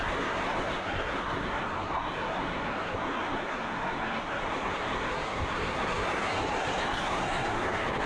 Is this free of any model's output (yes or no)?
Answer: no